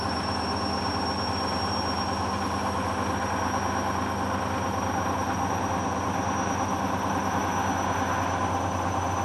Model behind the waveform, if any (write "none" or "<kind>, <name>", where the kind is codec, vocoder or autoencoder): none